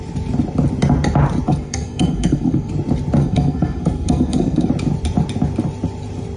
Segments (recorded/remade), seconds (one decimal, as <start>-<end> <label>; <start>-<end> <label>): 0.0-1.5 recorded; 1.5-2.7 remade; 2.7-3.2 recorded; 3.2-4.7 remade; 4.7-6.4 recorded